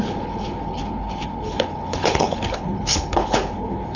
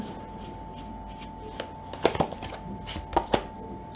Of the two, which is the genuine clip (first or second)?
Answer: second